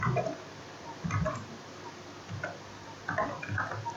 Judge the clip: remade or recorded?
recorded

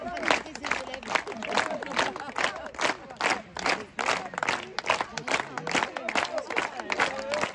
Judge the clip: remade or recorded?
recorded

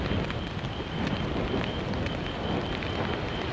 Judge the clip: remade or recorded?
recorded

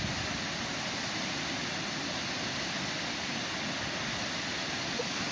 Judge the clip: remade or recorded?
recorded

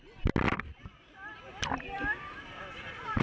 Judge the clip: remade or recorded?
recorded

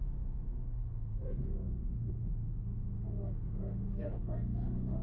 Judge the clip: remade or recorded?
remade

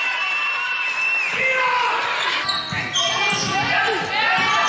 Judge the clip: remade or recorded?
recorded